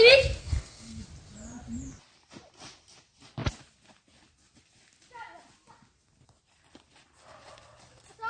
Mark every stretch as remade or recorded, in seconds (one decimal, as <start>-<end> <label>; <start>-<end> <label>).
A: 0.0-0.4 recorded; 0.4-1.0 remade; 1.0-8.3 recorded